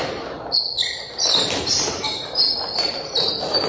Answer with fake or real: fake